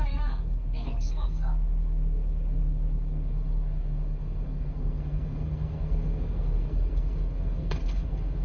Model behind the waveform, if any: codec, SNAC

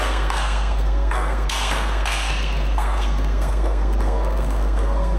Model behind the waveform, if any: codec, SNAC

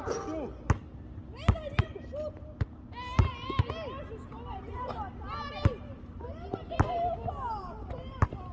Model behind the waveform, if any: none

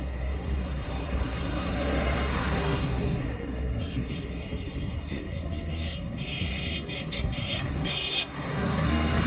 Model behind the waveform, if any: codec, SNAC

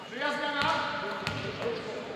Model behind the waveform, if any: none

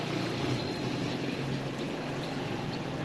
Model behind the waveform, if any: none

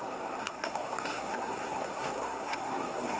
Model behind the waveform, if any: codec, SNAC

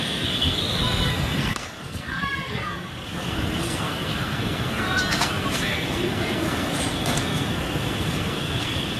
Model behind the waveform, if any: codec, SNAC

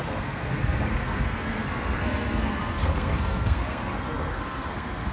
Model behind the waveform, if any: codec, SNAC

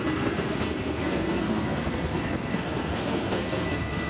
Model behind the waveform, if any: codec, SNAC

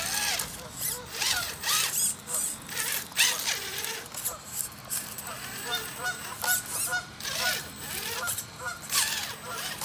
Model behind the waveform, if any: none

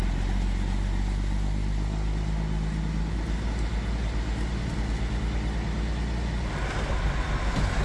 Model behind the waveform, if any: none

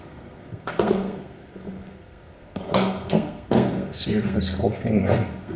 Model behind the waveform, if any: codec, SNAC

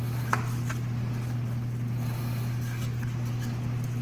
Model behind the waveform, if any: none